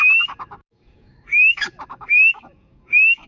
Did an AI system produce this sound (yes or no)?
yes